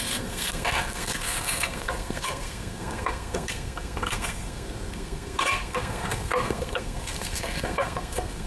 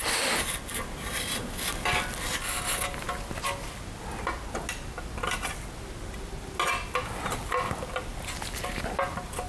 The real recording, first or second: second